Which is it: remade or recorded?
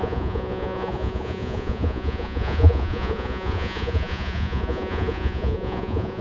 remade